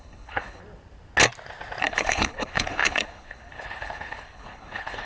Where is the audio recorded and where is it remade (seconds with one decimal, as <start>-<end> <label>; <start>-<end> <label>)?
0.0-0.6 remade; 0.6-1.8 recorded; 1.8-5.0 remade